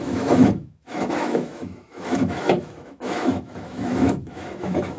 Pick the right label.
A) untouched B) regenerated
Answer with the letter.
B